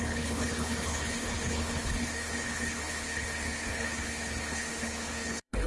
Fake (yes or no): yes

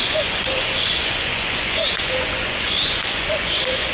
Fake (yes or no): yes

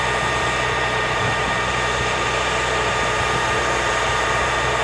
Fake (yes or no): yes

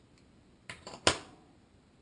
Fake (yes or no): no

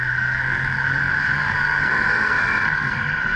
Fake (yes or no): yes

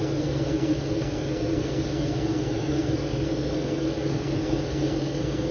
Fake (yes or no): yes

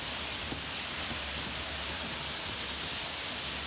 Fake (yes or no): no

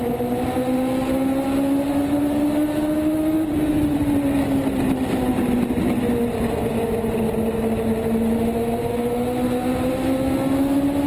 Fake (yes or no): no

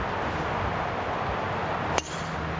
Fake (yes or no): no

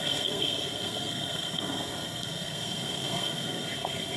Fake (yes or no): yes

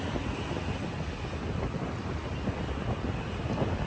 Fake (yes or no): no